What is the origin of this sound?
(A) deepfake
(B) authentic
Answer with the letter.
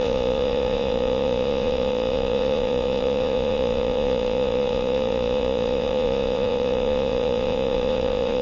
A